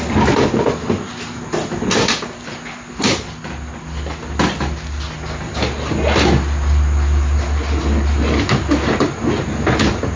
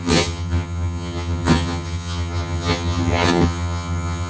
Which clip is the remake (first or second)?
second